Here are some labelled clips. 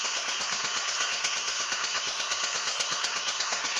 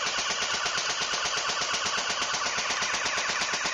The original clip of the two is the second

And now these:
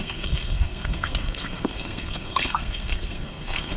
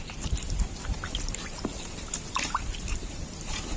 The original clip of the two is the second